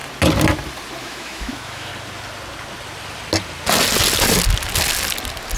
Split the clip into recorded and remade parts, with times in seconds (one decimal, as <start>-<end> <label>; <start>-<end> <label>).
0.0-1.0 recorded; 1.0-1.9 remade; 1.9-5.6 recorded